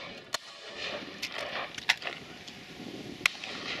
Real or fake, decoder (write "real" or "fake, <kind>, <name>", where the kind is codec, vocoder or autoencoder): real